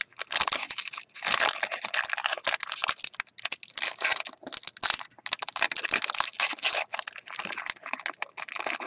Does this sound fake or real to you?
real